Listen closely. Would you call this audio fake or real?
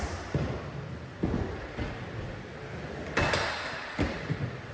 real